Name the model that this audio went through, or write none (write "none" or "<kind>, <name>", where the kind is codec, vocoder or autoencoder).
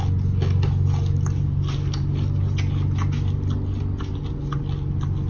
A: none